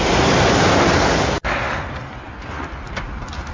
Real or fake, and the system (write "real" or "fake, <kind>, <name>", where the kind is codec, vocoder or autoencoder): real